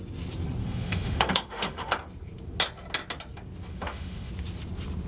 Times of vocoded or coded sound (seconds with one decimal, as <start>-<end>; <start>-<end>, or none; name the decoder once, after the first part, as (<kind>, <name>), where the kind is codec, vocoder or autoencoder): 0.6-1.9 (autoencoder, DAC-VAE); 3.7-4.3